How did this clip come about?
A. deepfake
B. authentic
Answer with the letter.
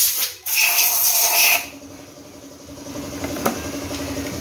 A